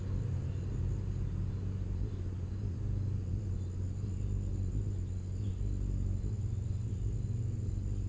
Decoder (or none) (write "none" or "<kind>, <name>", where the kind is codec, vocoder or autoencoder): none